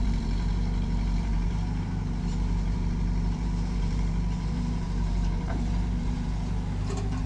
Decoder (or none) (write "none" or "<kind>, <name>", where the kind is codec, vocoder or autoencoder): vocoder, BigVGAN v2